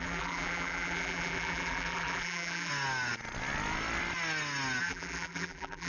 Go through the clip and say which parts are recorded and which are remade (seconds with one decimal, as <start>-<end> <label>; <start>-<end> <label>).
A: 0.0-2.7 remade; 2.7-4.8 recorded; 4.8-5.9 remade